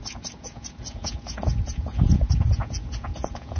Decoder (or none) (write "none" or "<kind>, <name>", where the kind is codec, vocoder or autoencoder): vocoder, Vocos